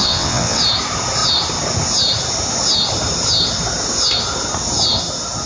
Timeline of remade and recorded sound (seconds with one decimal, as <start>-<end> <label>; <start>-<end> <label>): 0.0-0.6 remade; 0.6-5.5 recorded